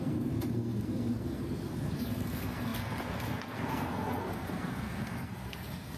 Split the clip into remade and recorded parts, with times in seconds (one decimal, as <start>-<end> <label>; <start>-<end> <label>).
0.0-6.0 remade